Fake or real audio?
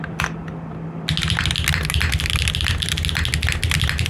real